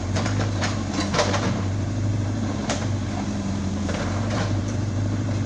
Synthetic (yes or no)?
yes